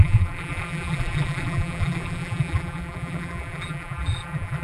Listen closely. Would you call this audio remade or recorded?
remade